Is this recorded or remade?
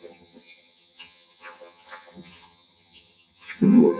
remade